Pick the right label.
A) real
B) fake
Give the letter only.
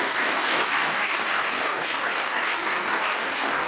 B